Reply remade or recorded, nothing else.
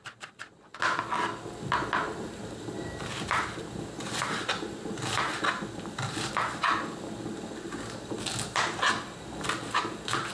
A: recorded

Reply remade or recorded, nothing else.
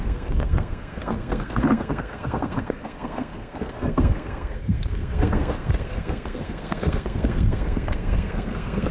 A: remade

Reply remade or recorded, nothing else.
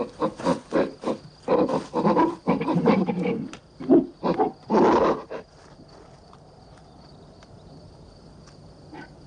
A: recorded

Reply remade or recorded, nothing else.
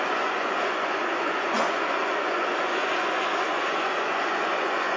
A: remade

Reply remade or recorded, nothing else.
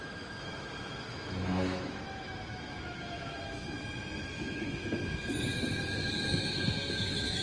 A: remade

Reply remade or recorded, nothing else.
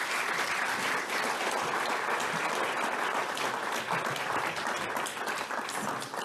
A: recorded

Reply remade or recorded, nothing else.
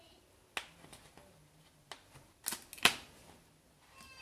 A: recorded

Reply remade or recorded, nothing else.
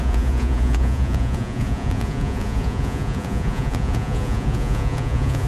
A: remade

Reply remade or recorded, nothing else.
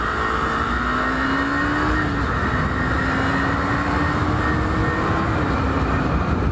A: recorded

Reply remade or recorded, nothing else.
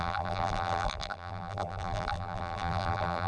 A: remade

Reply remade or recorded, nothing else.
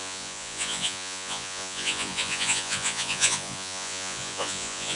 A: remade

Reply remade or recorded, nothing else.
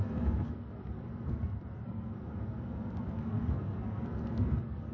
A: remade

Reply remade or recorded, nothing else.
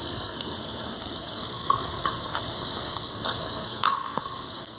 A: remade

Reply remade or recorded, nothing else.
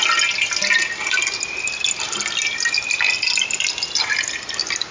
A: recorded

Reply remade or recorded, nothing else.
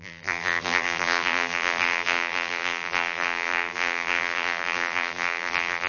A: remade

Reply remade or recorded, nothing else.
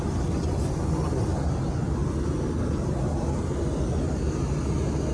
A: recorded